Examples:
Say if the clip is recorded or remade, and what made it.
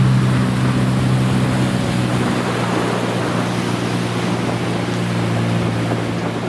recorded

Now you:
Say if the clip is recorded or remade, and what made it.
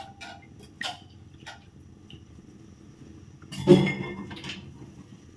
recorded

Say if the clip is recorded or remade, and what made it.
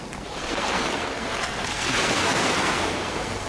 remade, codec, SNAC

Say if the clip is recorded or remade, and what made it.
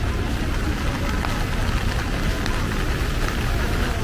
recorded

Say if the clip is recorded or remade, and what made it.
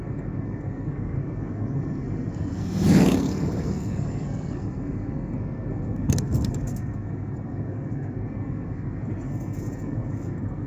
remade, codec, SNAC